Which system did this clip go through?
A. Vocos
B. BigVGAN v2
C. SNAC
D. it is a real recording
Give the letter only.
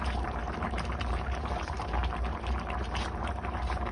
B